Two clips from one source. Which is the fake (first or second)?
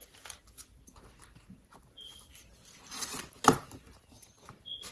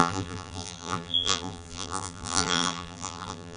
second